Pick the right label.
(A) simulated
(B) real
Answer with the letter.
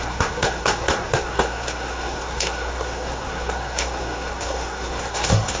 A